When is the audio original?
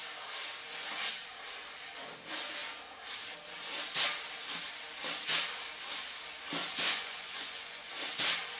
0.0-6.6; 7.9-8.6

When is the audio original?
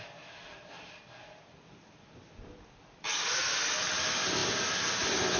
0.0-5.4